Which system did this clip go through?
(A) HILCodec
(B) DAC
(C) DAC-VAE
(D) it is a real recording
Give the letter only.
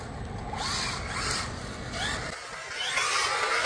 D